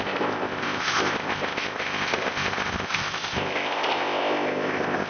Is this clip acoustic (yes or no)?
no